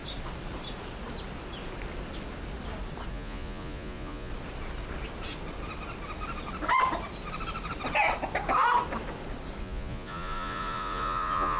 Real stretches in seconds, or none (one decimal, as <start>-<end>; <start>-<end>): 0.0-3.1; 4.3-9.6